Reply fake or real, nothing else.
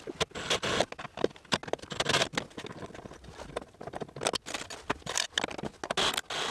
real